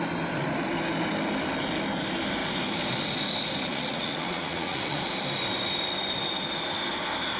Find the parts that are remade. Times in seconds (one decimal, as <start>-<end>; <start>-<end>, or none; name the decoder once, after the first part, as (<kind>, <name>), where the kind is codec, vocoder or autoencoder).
3.7-5.0 (vocoder, Vocos)